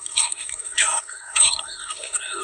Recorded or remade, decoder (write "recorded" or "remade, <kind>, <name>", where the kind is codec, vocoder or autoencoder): remade, codec, SNAC